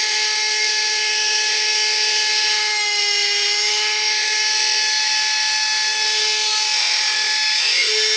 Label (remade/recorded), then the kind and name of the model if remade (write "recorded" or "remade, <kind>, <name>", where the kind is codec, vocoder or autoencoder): remade, autoencoder, DAC-VAE